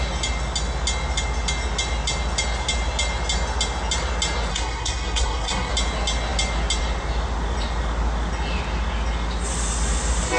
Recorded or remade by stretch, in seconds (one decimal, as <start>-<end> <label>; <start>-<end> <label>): 0.0-4.5 recorded; 4.5-5.7 remade; 5.7-10.4 recorded